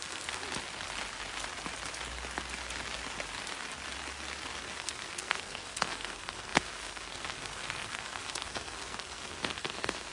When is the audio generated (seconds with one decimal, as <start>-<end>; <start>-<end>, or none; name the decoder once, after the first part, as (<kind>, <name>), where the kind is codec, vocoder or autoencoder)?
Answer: 0.0-0.4 (codec, SNAC); 4.6-10.1